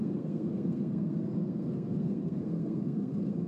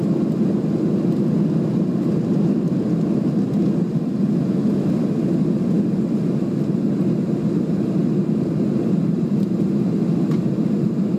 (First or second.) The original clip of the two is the second